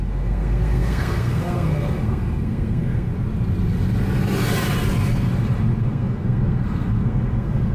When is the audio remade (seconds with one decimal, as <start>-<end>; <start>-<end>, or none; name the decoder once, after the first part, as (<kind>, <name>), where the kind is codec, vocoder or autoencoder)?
0.0-3.1 (codec, SNAC); 5.8-7.7